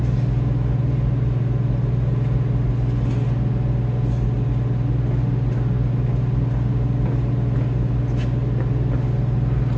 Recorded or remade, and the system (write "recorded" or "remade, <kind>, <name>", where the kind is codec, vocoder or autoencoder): recorded